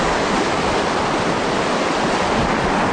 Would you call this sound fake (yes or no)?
no